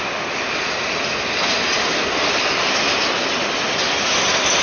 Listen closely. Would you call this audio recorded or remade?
recorded